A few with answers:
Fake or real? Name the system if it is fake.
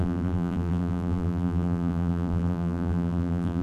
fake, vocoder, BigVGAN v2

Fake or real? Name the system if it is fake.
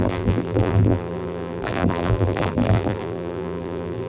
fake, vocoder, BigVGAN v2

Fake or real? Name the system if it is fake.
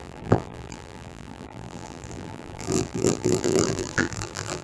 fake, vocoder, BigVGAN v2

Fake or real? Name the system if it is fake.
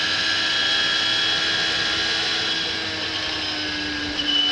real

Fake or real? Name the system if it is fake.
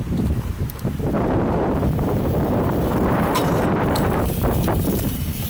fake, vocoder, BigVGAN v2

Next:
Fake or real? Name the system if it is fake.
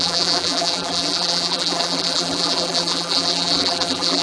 fake, vocoder, BigVGAN v2